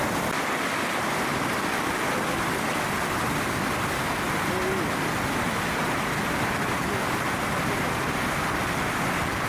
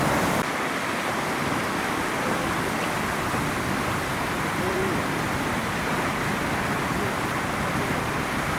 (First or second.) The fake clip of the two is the second